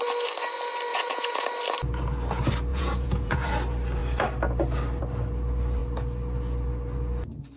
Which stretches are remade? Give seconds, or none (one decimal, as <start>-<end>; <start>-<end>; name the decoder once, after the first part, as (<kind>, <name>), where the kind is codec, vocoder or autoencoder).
0.9-1.5 (vocoder, Vocos); 2.7-3.5